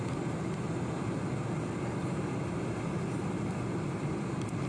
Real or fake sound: real